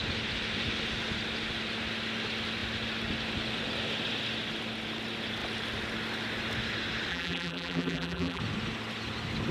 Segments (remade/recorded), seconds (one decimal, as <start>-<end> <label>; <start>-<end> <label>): 0.0-7.1 recorded; 7.1-8.4 remade; 8.4-9.5 recorded